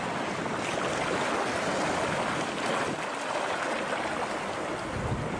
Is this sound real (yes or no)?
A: yes